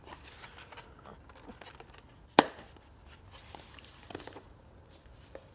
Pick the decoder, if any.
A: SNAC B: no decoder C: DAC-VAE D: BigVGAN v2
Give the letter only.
D